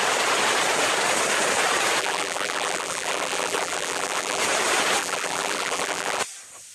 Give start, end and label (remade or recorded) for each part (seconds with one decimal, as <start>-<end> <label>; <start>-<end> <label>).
0.0-2.0 recorded; 2.0-4.4 remade; 4.4-5.0 recorded; 5.0-6.2 remade; 6.2-6.7 recorded